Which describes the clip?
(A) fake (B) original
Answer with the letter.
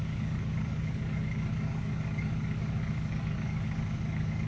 A